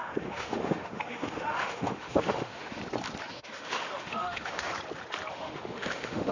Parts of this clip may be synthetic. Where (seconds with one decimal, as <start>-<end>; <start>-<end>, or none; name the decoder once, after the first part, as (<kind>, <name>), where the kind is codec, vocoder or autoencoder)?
0.0-2.8 (autoencoder, DAC-VAE); 3.3-4.7; 5.3-6.3